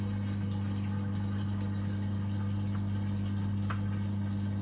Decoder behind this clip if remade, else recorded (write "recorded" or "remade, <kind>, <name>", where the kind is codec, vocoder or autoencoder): recorded